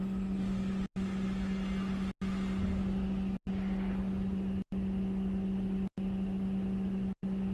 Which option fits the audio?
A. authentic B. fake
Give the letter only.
A